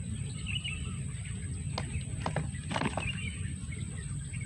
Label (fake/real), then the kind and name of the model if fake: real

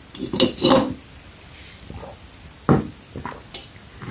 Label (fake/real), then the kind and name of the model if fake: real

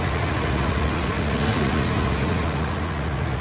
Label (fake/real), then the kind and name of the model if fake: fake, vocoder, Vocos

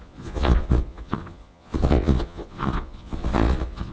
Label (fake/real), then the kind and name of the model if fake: fake, vocoder, Vocos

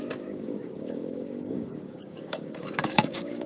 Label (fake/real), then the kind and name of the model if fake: fake, codec, DAC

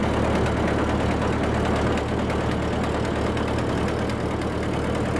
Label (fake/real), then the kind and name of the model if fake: real